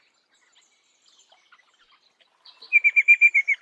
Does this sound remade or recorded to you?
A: recorded